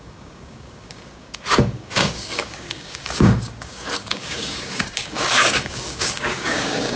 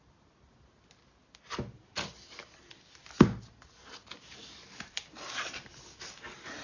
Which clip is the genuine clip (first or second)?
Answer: second